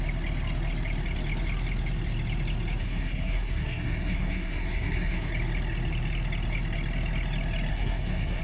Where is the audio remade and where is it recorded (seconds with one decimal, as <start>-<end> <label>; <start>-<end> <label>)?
0.0-2.8 recorded; 2.8-5.3 remade; 5.3-7.7 recorded; 7.7-8.4 remade